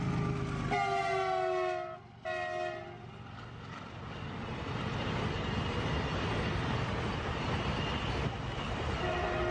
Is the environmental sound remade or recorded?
recorded